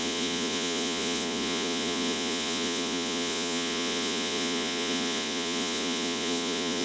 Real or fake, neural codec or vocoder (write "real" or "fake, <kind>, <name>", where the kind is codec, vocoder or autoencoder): fake, vocoder, Vocos